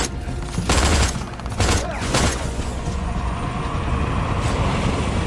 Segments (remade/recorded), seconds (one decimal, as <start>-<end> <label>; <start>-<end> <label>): 0.0-0.9 recorded; 0.9-4.1 remade; 4.1-5.3 recorded